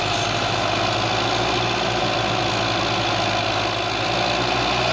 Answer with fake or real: real